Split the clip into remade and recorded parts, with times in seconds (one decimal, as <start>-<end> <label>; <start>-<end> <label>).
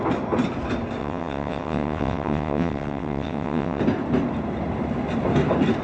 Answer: 0.0-1.0 recorded; 1.0-3.8 remade; 3.8-5.8 recorded